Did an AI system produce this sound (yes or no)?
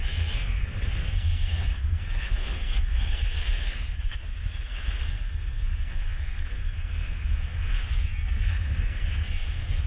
yes